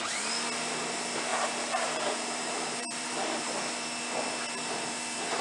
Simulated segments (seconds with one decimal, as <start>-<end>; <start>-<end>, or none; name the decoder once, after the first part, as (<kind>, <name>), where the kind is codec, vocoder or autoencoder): 1.3-3.6 (vocoder, BigVGAN v2)

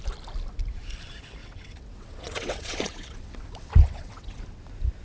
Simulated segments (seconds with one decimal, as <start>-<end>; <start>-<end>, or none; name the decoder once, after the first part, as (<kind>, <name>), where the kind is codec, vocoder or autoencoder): 1.4-4.4 (vocoder, WaveNeXt)

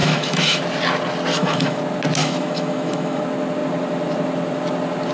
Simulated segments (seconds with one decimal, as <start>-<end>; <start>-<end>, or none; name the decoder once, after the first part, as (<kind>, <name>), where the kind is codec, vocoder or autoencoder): 0.0-0.6 (autoencoder, DAC-VAE); 1.3-1.8; 2.2-3.2

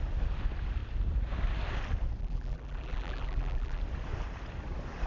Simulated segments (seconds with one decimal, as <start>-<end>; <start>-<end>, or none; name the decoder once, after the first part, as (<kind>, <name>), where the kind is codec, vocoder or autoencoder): 2.2-3.8 (vocoder, BigVGAN v2)

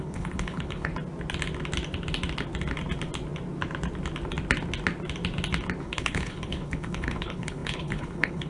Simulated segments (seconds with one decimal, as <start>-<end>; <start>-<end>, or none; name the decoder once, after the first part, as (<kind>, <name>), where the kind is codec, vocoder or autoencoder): 0.0-0.9 (codec, HILCodec); 5.8-8.5

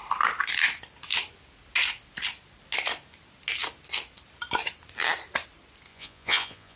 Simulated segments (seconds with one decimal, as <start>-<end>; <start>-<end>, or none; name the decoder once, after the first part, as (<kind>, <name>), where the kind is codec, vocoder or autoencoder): 5.9-6.8 (vocoder, Vocos)

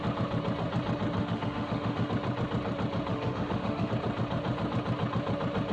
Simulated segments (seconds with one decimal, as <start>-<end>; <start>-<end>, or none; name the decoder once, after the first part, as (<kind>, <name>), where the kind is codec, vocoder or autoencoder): 1.2-2.1 (autoencoder, DAC-VAE); 3.1-3.9